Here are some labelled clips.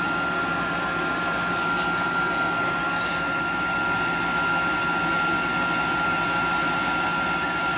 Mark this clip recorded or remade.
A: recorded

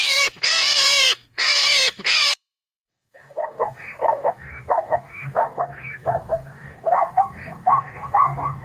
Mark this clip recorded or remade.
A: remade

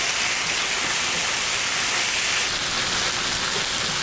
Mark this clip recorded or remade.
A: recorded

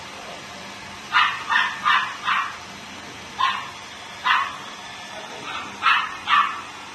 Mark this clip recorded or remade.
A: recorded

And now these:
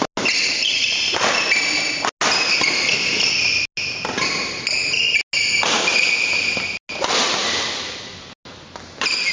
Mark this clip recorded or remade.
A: recorded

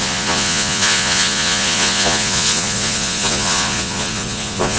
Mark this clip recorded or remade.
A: remade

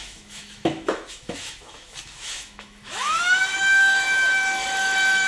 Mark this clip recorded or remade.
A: remade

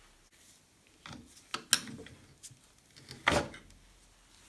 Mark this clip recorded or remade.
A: recorded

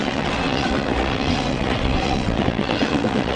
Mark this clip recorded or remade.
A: remade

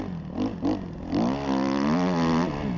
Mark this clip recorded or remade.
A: recorded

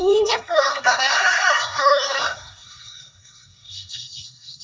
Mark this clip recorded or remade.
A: remade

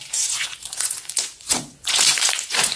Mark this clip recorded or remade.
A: remade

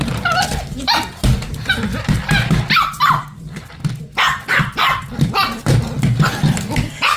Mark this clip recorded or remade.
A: recorded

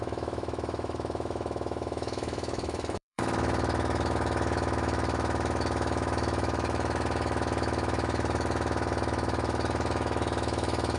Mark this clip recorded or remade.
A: remade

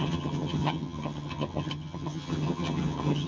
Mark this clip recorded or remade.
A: remade